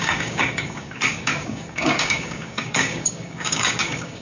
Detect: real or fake fake